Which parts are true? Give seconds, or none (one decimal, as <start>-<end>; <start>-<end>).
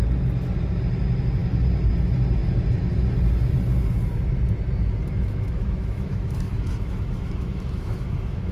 0.0-5.1